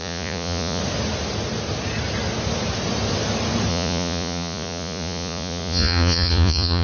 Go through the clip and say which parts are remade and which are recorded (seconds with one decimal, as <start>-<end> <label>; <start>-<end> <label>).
0.0-0.8 remade; 0.8-3.7 recorded; 3.7-6.8 remade